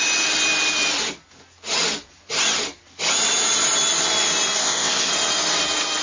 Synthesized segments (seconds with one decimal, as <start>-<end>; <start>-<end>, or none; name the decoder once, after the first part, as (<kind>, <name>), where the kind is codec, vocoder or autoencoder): 4.6-5.1 (codec, ZipCodec)